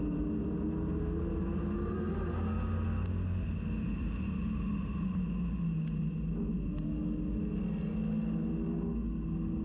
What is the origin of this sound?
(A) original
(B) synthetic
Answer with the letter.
A